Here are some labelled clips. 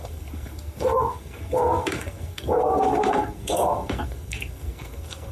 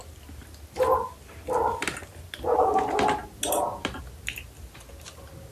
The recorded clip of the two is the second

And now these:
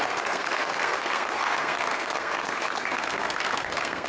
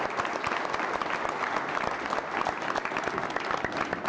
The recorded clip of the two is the second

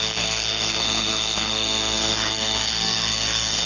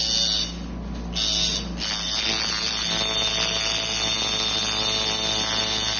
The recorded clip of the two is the second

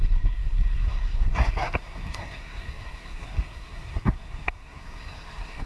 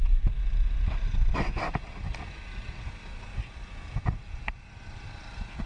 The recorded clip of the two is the second